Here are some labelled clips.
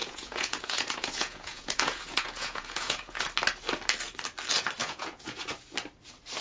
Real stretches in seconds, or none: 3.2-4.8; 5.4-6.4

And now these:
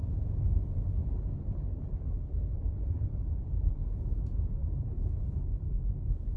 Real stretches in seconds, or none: 0.0-1.0; 3.9-4.6; 5.8-6.4

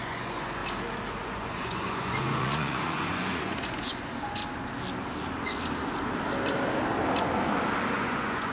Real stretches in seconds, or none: 0.6-1.2; 4.4-7.9

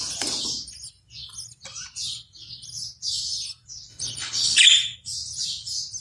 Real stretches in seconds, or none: 0.0-3.9; 4.6-6.0

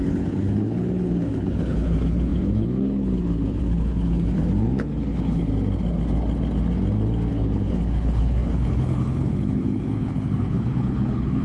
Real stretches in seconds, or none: 5.5-7.3

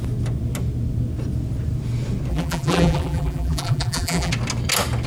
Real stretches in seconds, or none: 0.0-2.3; 4.3-5.1